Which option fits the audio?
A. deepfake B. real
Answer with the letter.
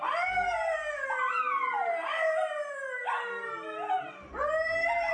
B